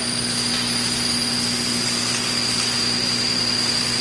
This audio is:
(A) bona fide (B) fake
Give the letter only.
A